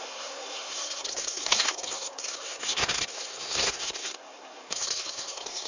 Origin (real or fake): fake